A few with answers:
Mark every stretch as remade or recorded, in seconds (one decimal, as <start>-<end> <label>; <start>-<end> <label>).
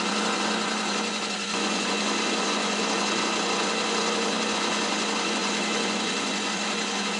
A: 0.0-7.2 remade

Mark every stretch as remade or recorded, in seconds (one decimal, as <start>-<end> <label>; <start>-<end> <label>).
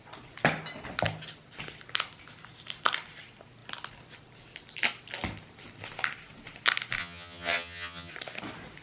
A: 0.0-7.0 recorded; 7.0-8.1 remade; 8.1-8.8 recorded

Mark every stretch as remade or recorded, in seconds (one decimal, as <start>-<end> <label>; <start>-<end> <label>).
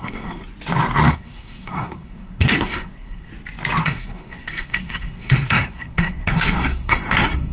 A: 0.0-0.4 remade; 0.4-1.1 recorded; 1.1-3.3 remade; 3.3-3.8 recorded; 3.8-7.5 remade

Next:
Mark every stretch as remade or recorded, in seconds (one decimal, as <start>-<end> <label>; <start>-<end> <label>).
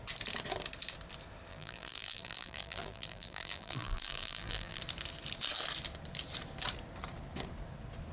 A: 0.0-1.5 recorded; 1.5-4.8 remade; 4.8-8.1 recorded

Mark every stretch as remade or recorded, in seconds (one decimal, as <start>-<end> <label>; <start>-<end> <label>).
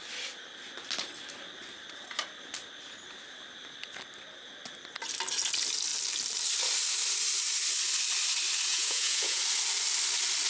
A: 0.0-8.7 recorded; 8.7-9.4 remade; 9.4-10.5 recorded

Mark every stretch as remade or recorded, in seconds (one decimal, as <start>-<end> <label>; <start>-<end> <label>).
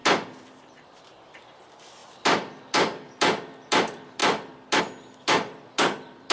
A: 0.0-6.3 remade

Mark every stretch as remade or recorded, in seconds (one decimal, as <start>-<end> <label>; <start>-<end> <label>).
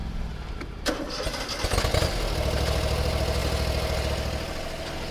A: 0.0-5.1 recorded